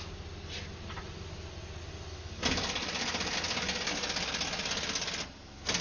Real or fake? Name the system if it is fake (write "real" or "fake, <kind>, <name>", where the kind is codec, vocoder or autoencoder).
real